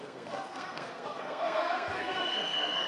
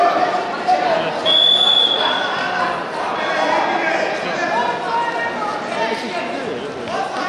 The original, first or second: second